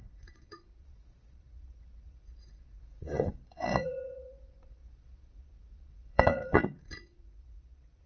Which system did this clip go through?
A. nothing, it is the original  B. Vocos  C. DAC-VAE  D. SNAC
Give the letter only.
B